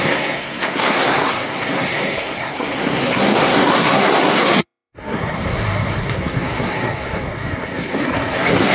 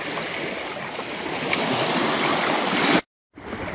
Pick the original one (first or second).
second